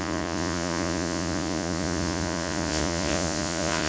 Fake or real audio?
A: fake